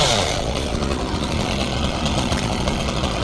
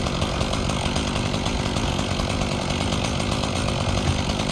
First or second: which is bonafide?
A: second